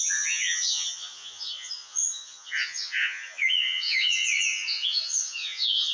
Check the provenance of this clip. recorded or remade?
remade